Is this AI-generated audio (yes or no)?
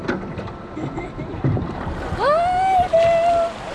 no